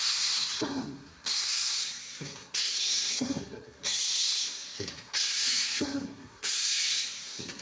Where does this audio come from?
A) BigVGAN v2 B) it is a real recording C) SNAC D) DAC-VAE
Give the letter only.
C